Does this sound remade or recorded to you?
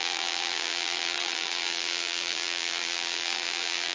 remade